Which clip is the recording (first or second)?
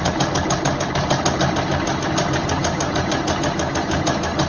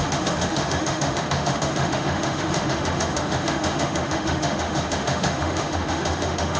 first